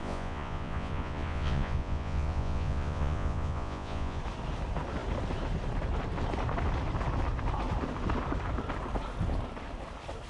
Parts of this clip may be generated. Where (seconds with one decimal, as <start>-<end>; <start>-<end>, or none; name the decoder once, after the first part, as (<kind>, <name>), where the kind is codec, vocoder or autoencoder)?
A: 0.0-4.2 (vocoder, Vocos)